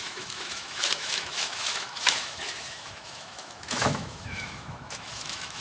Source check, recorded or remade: remade